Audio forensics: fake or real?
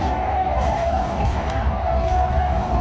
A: fake